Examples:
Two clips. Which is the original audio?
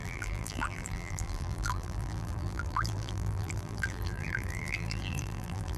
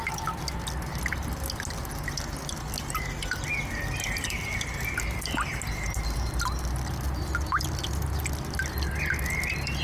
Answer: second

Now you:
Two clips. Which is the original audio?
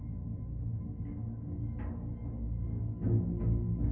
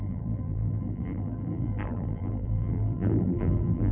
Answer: first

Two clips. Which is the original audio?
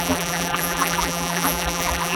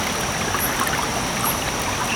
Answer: second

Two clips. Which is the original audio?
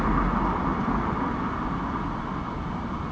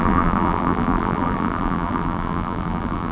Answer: first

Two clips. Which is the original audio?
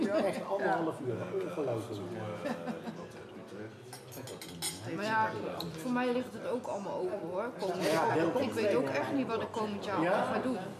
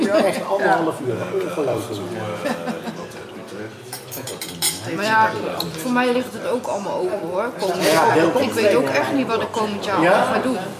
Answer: first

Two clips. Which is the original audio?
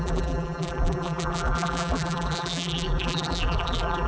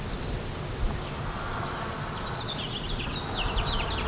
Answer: second